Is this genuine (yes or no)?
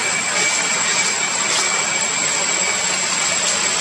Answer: yes